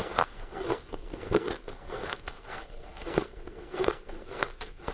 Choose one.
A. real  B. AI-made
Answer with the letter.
B